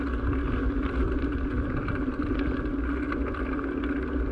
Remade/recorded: recorded